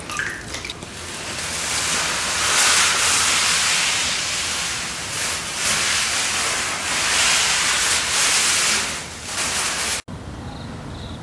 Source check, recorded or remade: recorded